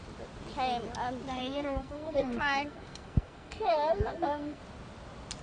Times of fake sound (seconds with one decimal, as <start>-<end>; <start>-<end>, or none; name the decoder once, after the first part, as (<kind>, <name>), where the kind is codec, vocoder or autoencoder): 1.4-4.6 (codec, SNAC)